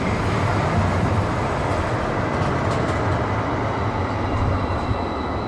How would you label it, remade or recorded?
recorded